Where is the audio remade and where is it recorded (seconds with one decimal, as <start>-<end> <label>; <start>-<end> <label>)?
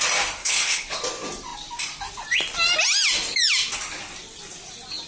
0.0-0.4 recorded; 0.4-1.0 remade; 1.0-5.1 recorded